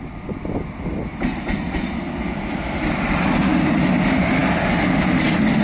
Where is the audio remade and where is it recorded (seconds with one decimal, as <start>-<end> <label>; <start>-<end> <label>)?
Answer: 0.0-5.6 recorded